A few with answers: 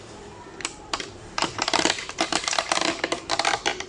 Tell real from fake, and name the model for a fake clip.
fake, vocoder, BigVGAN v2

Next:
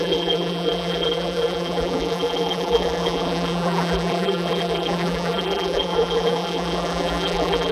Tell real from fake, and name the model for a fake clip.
fake, vocoder, BigVGAN v2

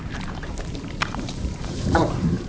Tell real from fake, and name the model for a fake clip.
fake, vocoder, BigVGAN v2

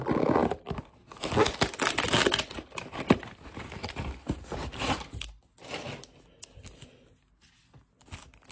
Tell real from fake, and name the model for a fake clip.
real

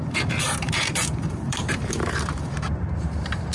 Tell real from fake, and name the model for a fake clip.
fake, vocoder, BigVGAN v2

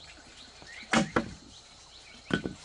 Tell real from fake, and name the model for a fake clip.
real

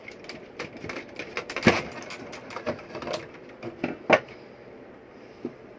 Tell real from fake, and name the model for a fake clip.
fake, vocoder, BigVGAN v2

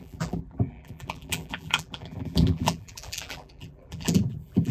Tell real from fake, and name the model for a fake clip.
fake, vocoder, BigVGAN v2